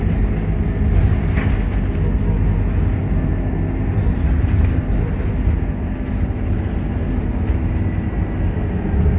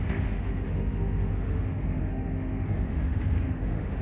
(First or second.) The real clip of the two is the first